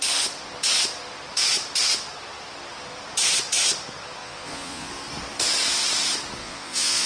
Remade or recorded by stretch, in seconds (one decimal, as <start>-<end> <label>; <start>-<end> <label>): 0.0-4.2 recorded; 4.2-4.9 remade; 4.9-6.4 recorded; 6.4-7.1 remade